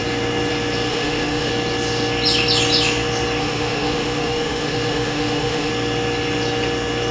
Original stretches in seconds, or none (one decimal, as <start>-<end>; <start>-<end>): 0.0-0.9; 1.5-3.4; 5.7-7.1